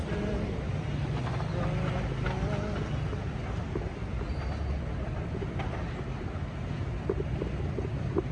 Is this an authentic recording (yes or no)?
yes